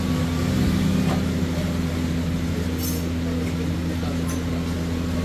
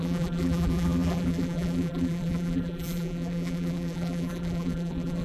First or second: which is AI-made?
second